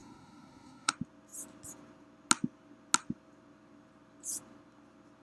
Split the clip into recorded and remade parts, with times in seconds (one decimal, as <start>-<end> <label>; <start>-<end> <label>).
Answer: 0.0-0.9 remade; 0.9-5.2 recorded